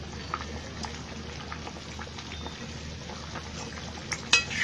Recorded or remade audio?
recorded